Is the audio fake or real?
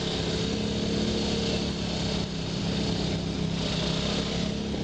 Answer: real